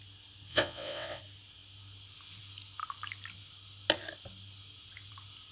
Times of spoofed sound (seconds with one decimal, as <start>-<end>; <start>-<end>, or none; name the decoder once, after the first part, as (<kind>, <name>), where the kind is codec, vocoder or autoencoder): 0.5-1.2 (vocoder, WaveNeXt)